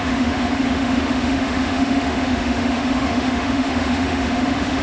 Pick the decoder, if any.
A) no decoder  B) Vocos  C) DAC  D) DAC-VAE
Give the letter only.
D